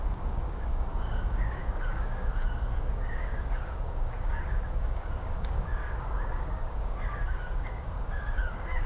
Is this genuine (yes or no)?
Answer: no